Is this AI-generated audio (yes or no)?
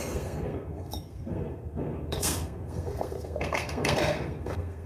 yes